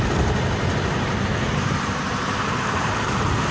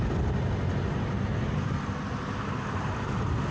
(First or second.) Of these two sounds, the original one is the second